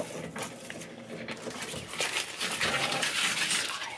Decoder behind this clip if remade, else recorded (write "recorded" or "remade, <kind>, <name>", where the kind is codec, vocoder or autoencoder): recorded